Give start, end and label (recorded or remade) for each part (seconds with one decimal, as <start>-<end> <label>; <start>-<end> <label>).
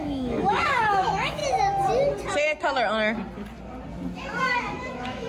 0.0-1.4 remade; 1.4-4.6 recorded; 4.6-5.3 remade